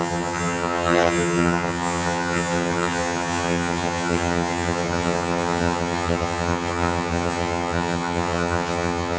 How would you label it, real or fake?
fake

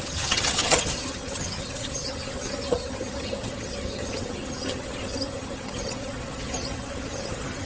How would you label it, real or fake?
fake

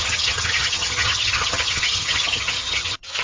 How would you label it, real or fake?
fake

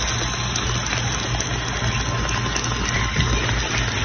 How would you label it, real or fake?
real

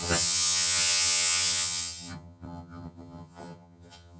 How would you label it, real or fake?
fake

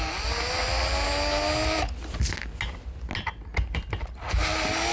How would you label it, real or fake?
real